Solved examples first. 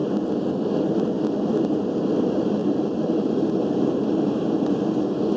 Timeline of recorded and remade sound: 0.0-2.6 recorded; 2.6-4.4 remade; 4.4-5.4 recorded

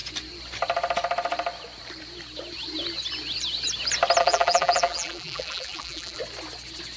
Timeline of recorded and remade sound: 0.0-4.2 recorded; 4.2-6.2 remade; 6.2-7.0 recorded

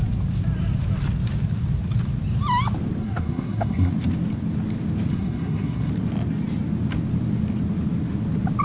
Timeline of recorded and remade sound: 0.0-3.0 recorded; 3.0-3.9 remade; 3.9-5.1 recorded; 5.1-5.9 remade; 5.9-8.6 recorded

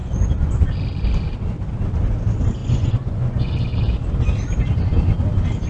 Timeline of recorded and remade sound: 0.0-0.5 remade; 0.5-2.6 recorded; 2.6-3.5 remade; 3.5-5.7 recorded

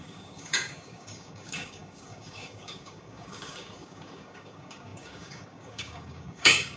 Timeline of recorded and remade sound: 0.0-6.8 remade

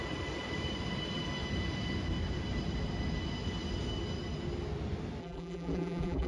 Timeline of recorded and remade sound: 0.0-5.2 recorded; 5.2-6.3 remade

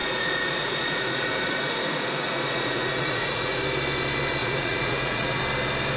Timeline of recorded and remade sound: 0.0-3.6 remade; 3.6-4.4 recorded; 4.4-5.4 remade; 5.4-6.0 recorded